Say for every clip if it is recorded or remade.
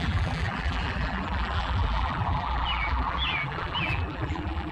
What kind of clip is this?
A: remade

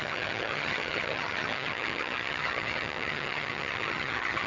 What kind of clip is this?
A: remade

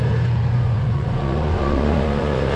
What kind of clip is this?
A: remade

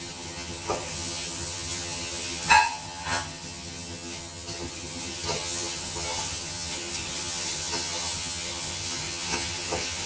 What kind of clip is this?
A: remade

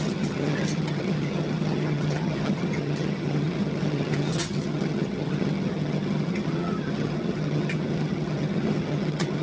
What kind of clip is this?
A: remade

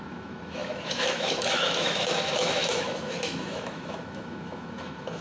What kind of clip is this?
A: remade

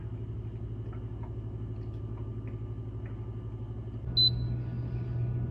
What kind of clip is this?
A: recorded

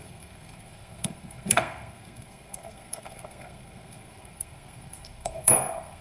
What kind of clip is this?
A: remade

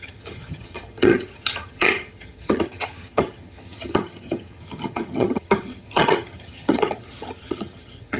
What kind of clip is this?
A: remade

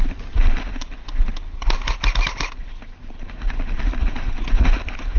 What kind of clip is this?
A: recorded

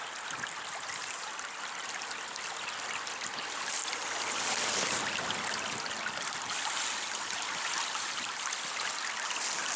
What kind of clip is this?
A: recorded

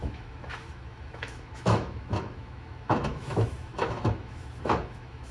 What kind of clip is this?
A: remade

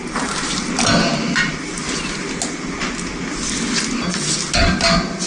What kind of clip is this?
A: recorded